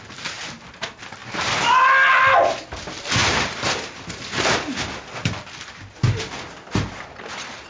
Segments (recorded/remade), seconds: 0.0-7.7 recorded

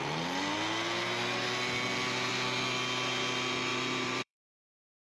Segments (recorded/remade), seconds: 0.0-3.7 recorded; 3.7-5.0 remade

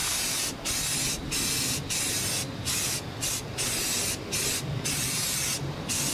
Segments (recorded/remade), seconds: 0.0-6.1 recorded

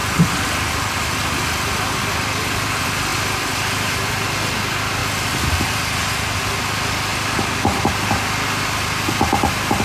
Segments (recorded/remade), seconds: 0.0-5.0 recorded; 5.0-6.0 remade; 6.0-9.8 recorded